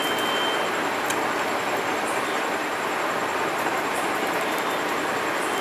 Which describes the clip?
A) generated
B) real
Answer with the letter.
B